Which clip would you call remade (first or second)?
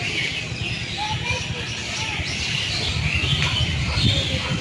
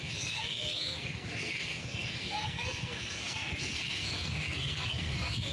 second